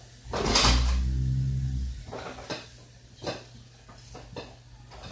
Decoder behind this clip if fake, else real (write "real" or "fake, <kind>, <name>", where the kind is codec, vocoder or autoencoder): real